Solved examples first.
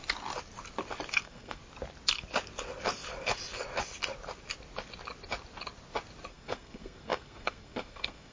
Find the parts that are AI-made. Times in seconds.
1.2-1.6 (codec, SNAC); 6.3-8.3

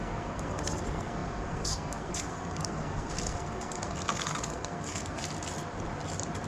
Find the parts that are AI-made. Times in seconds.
0.0-5.2 (codec, SNAC)

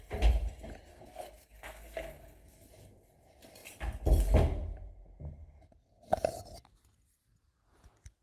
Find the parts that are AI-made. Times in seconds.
0.9-2.7 (codec, SNAC)

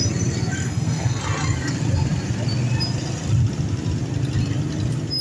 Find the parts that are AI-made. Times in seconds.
0.6-1.2 (codec, SNAC)

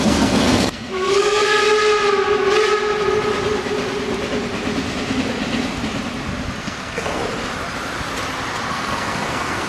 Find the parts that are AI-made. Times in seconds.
0.0-1.6 (codec, SNAC); 6.6-7.2; 8.7-9.7

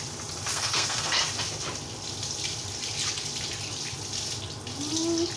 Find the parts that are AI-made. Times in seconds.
0.5-1.2 (codec, SNAC)

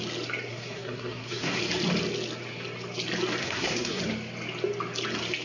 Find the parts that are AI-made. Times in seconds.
0.5-1.6 (codec, SNAC); 3.4-4.0